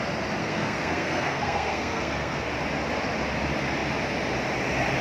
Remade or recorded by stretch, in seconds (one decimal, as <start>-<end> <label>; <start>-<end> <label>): 0.0-0.4 recorded; 0.4-2.5 remade; 2.5-5.0 recorded